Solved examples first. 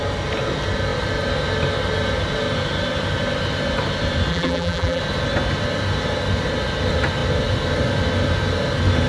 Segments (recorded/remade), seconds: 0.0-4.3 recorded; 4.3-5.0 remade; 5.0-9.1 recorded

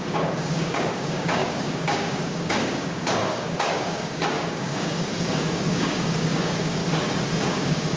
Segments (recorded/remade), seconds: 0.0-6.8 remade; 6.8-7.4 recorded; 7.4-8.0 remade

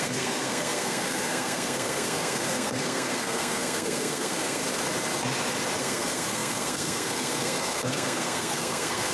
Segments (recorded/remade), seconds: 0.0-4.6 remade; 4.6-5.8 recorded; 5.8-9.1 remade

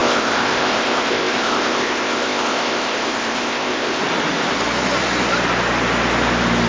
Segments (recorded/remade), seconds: 0.0-4.0 remade; 4.0-6.7 recorded

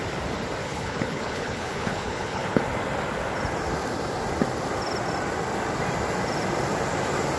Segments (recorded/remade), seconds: 0.0-0.6 recorded; 0.6-2.6 remade; 2.6-7.4 recorded

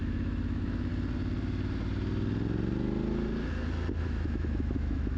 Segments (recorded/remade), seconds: 0.0-0.9 remade; 0.9-4.0 recorded; 4.0-5.2 remade

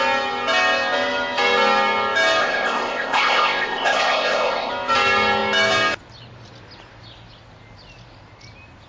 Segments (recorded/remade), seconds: 0.0-2.4 recorded; 2.4-4.7 remade; 4.7-8.9 recorded

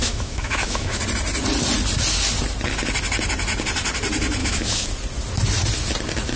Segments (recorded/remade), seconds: 0.0-1.0 remade; 1.0-4.4 recorded; 4.4-4.9 remade; 4.9-6.4 recorded